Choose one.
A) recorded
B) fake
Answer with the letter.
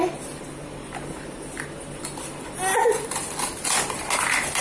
A